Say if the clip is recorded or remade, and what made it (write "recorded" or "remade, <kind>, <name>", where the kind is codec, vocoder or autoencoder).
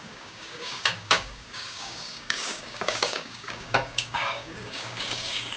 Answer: remade, codec, DAC